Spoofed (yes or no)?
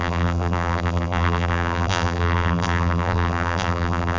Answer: yes